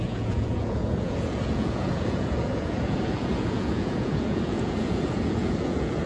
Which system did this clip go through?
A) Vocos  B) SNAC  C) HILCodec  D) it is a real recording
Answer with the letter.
A